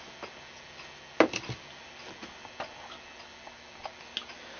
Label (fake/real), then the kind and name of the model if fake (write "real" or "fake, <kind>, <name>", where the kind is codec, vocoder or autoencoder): real